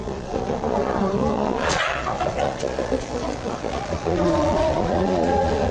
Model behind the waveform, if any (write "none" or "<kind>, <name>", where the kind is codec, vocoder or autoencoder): vocoder, Vocos